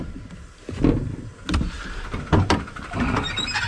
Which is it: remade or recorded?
recorded